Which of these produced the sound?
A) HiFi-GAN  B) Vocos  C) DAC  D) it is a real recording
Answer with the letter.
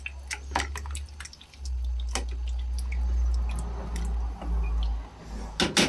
D